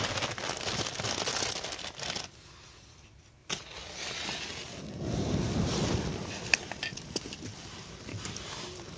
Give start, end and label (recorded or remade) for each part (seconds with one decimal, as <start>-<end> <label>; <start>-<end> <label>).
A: 0.0-4.6 recorded; 4.6-6.6 remade; 6.6-9.0 recorded